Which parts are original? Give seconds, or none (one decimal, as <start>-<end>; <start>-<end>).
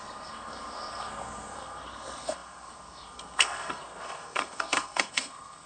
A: none